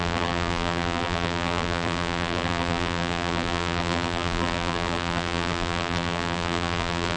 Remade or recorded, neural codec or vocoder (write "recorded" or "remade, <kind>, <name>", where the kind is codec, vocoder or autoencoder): remade, vocoder, BigVGAN v2